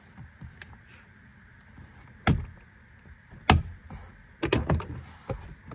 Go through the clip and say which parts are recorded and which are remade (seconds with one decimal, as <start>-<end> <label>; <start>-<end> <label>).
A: 0.0-5.7 recorded